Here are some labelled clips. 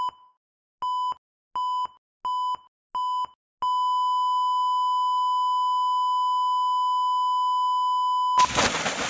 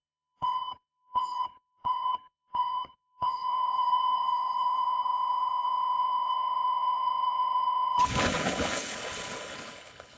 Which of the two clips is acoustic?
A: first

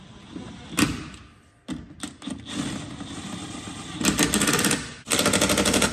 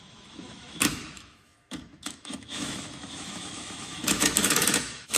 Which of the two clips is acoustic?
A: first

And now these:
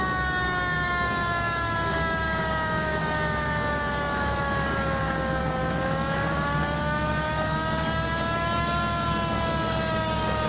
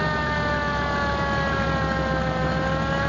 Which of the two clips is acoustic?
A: second